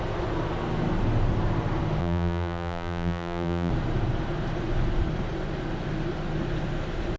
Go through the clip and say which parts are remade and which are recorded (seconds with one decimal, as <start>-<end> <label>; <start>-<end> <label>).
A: 0.0-2.0 recorded; 2.0-3.7 remade; 3.7-7.2 recorded